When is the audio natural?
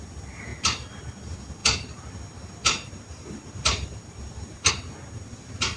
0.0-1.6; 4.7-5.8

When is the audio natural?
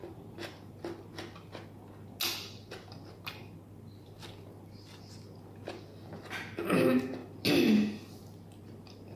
0.8-9.2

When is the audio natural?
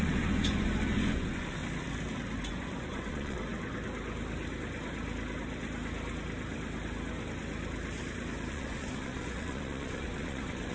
1.6-2.4; 3.5-8.5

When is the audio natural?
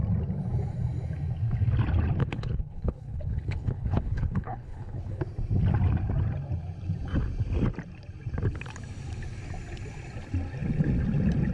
0.0-2.2; 5.2-11.5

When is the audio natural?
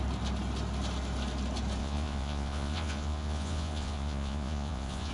0.0-1.8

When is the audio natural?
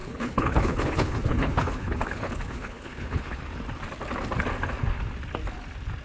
3.4-6.0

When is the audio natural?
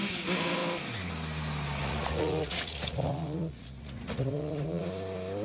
0.0-1.8; 4.8-5.4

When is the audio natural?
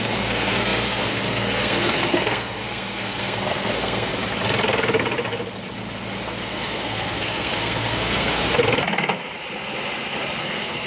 4.1-6.4; 8.4-10.4